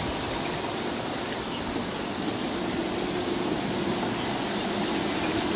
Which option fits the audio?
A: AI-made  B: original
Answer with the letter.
B